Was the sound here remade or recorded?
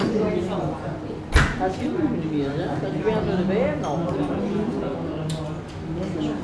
recorded